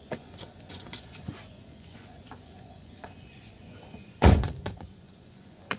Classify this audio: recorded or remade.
remade